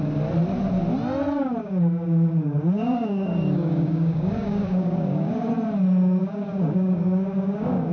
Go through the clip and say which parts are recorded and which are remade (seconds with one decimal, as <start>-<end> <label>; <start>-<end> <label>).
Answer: 0.0-1.6 recorded; 1.6-5.5 remade; 5.5-6.2 recorded; 6.2-7.9 remade

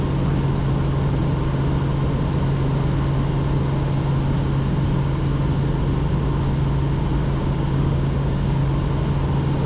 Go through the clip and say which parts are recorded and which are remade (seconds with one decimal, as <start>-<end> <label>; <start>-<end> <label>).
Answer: 0.0-7.2 recorded; 7.2-8.6 remade; 8.6-9.7 recorded